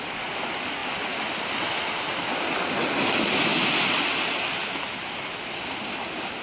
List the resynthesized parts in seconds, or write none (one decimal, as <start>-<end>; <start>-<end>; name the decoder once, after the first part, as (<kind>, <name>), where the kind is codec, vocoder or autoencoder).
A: none